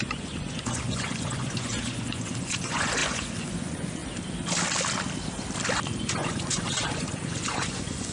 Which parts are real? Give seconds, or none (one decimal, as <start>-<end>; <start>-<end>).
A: 4.0-6.0